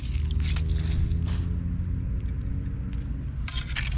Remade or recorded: recorded